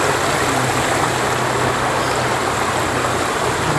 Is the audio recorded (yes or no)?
yes